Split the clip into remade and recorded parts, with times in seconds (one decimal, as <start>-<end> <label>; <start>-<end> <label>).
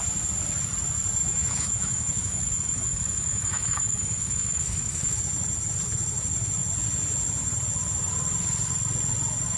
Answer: 0.0-1.2 recorded; 1.2-5.2 remade; 5.2-9.6 recorded